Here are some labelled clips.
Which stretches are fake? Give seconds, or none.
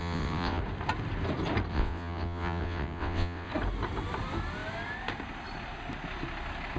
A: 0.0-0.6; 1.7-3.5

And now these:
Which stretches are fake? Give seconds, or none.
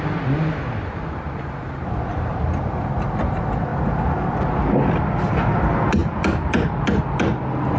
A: none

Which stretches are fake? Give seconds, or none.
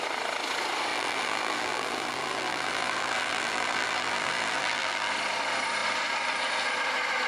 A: 0.9-5.1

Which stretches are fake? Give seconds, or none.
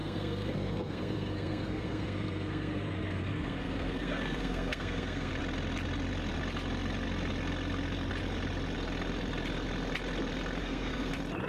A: 0.0-5.3; 10.6-11.1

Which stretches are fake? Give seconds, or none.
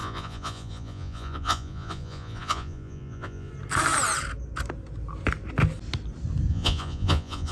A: 0.0-3.5; 6.5-7.5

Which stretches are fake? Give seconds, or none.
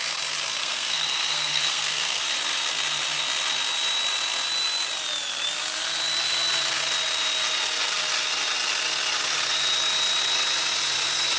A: 0.6-2.2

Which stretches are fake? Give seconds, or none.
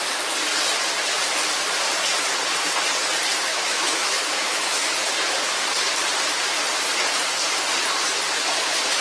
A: 3.5-4.9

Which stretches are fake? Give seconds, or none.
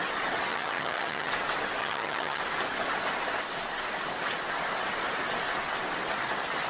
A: 0.5-1.3; 1.8-2.4